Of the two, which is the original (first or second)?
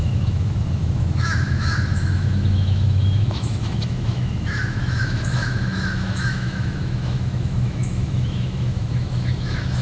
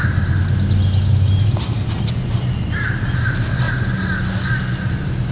second